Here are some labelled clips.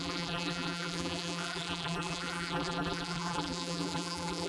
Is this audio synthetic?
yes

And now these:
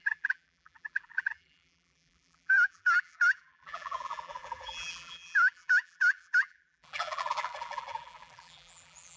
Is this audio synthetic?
yes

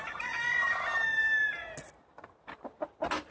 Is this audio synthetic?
no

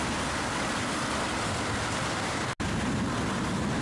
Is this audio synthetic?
no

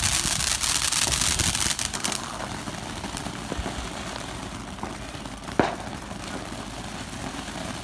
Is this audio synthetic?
no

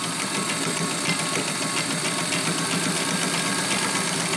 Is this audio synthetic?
no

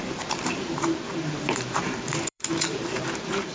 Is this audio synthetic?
yes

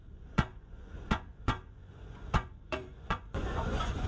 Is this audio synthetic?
yes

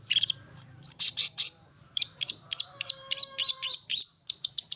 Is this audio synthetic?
yes